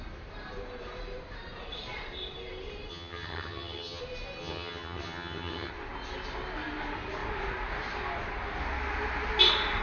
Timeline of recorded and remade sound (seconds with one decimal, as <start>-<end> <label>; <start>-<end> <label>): 0.0-2.9 recorded; 2.9-4.0 remade; 4.0-4.4 recorded; 4.4-5.7 remade; 5.7-9.8 recorded